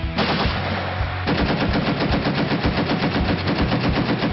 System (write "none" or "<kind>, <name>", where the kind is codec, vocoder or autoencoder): none